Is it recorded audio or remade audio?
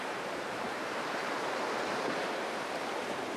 remade